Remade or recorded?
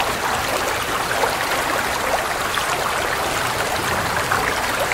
recorded